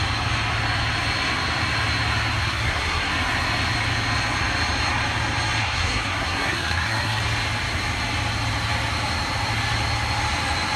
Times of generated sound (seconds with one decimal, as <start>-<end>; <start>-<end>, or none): 2.4-3.1; 5.6-7.2